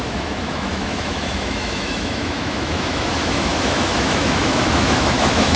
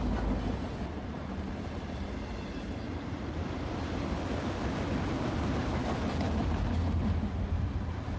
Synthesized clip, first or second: first